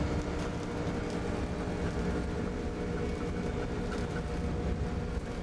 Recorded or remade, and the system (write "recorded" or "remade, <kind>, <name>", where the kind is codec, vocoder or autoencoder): recorded